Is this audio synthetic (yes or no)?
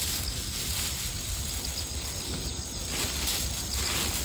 no